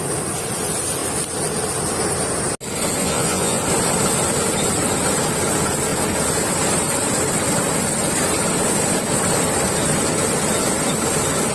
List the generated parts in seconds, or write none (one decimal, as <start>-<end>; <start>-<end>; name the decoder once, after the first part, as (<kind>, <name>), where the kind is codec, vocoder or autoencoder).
3.0-3.6 (vocoder, Vocos)